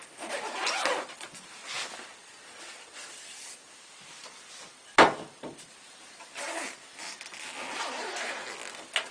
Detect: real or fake fake